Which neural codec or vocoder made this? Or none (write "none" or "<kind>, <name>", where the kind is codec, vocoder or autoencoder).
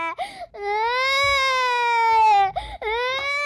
none